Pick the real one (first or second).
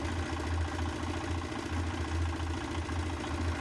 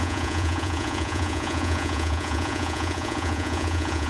first